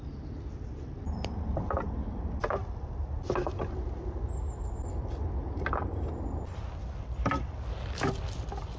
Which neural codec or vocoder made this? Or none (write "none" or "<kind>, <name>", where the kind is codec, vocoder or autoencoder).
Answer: none